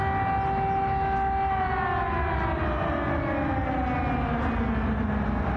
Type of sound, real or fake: real